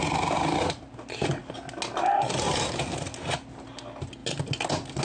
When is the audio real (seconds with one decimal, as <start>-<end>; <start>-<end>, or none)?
0.0-5.0

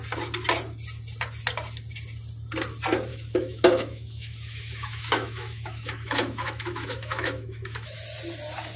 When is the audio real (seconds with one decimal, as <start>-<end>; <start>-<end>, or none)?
0.0-3.1; 8.0-8.8

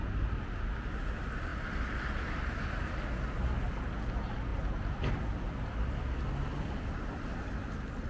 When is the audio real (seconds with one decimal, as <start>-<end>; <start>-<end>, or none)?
0.0-8.1

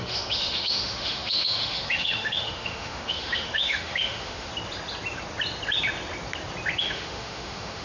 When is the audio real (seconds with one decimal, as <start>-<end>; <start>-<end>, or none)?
4.5-6.8

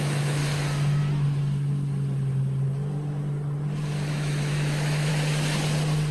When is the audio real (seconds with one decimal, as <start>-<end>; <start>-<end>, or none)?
0.4-4.1; 5.1-6.1